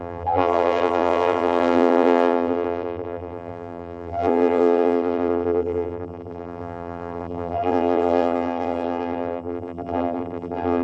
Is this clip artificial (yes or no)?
yes